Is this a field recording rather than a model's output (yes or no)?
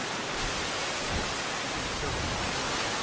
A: yes